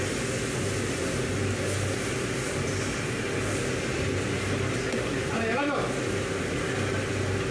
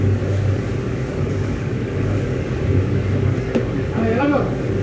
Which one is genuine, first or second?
first